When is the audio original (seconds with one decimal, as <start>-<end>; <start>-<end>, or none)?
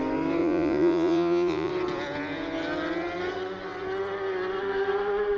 0.0-0.4; 1.7-5.4